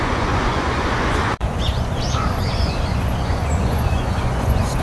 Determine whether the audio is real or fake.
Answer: fake